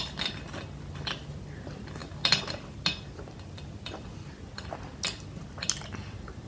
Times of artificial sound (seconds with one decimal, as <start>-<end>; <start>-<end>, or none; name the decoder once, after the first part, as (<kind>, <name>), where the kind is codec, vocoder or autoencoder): none